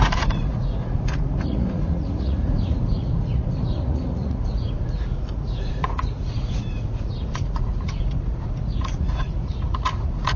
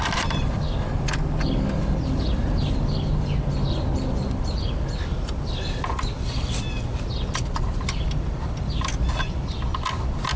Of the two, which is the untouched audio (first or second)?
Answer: second